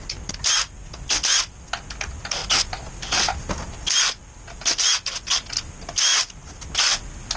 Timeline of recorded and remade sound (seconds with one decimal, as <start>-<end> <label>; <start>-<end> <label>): 0.0-7.4 recorded